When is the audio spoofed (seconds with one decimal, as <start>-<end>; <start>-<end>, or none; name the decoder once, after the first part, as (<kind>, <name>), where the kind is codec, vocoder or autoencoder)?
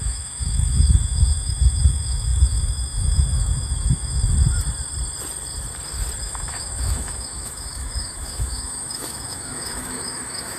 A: 0.0-4.3 (autoencoder, DAC-VAE); 6.2-10.6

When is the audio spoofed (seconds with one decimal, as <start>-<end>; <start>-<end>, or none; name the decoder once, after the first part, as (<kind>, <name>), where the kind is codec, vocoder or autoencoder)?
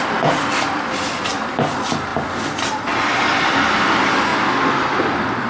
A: 0.0-4.3 (vocoder, BigVGAN v2); 5.0-5.5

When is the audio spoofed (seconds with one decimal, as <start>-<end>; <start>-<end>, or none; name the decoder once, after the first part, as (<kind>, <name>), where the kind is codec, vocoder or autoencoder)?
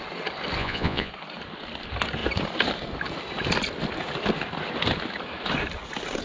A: 0.6-1.1 (vocoder, Vocos)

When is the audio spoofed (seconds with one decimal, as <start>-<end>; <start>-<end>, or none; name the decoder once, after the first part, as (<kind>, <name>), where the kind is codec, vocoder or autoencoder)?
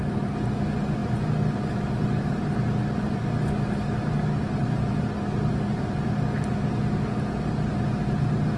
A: none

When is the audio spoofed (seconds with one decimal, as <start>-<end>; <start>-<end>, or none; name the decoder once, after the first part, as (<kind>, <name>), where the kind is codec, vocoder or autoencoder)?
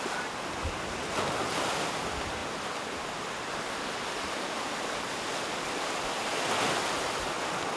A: none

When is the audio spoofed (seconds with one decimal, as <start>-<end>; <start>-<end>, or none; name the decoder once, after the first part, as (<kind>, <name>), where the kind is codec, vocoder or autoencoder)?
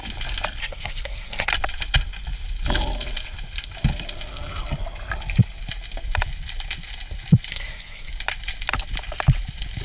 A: 0.6-1.5 (codec, SNAC); 7.5-8.1